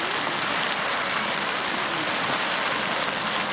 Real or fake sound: real